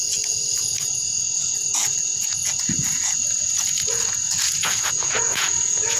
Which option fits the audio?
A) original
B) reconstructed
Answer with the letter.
B